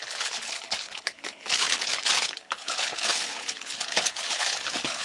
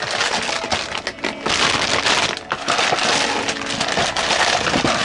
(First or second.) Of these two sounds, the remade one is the first